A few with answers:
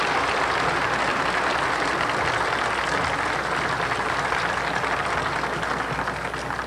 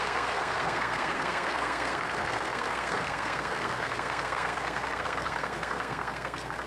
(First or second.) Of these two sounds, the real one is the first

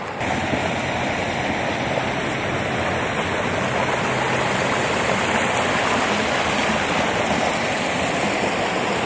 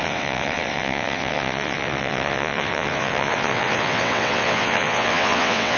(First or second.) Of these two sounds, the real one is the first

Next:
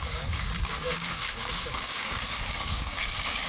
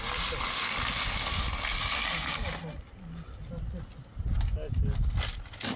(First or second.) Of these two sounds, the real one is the second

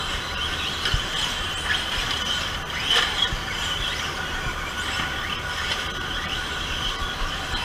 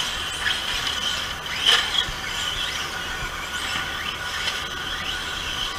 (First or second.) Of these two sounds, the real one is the second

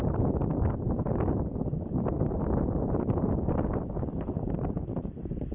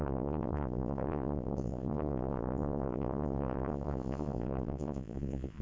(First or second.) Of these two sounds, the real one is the first